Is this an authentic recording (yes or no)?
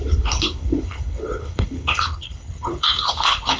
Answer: no